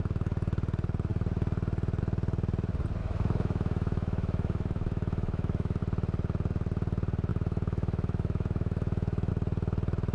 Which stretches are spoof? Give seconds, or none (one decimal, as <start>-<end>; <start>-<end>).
3.0-5.8; 7.3-9.3